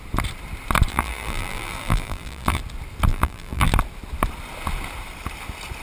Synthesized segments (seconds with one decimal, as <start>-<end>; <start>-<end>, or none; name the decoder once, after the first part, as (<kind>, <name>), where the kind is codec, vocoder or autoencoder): 0.9-2.6 (vocoder, BigVGAN v2); 3.1-3.7